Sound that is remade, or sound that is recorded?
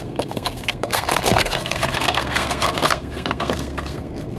remade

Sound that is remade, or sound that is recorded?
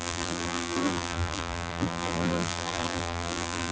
remade